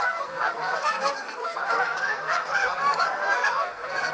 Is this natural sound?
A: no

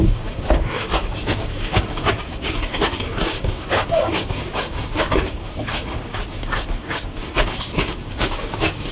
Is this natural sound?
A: no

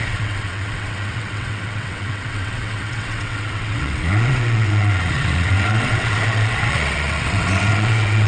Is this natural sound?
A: no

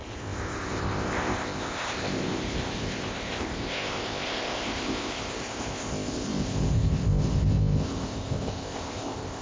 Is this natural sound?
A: no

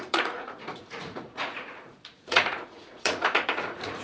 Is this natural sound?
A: no